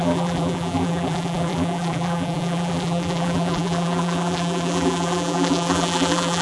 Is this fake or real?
fake